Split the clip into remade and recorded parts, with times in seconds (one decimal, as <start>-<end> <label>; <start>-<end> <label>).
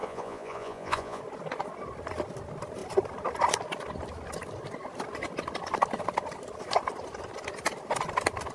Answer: 0.0-1.2 remade; 1.2-8.5 recorded